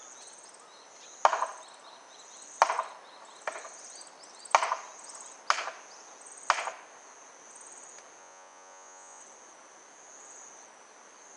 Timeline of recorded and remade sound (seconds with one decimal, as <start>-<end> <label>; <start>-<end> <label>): 0.0-8.2 recorded; 8.2-9.2 remade; 9.2-11.4 recorded